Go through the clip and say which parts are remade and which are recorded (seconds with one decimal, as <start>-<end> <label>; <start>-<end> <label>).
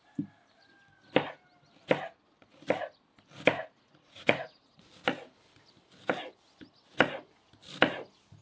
0.0-3.6 recorded; 3.6-4.9 remade; 4.9-8.4 recorded